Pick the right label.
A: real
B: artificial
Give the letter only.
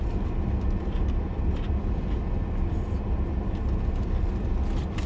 A